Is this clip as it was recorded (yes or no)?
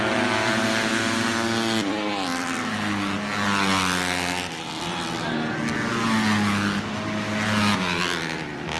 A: yes